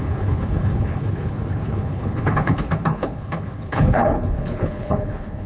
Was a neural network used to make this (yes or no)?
yes